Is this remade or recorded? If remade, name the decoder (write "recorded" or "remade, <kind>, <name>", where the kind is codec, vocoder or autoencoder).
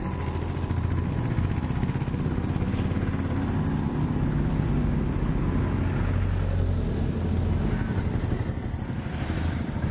recorded